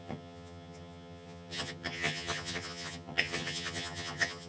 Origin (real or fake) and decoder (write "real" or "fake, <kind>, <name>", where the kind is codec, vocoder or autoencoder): fake, vocoder, HiFi-GAN